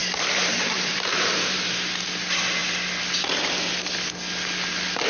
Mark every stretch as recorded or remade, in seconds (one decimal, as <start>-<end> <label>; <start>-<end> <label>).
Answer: 0.0-1.7 remade; 1.7-5.1 recorded